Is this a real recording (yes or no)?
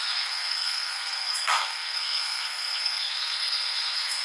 no